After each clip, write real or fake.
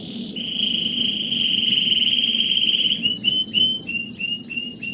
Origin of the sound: real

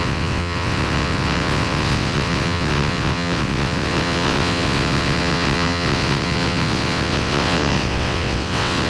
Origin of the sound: fake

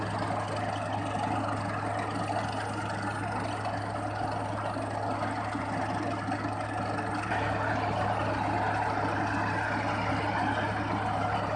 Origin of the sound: real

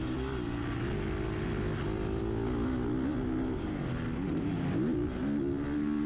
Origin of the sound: real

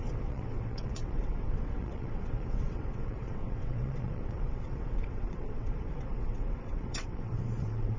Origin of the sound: fake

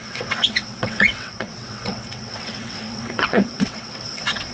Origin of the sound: fake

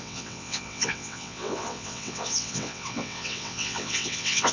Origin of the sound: fake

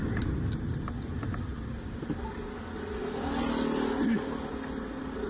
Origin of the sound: real